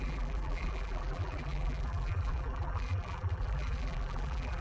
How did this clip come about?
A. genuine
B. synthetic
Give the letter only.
B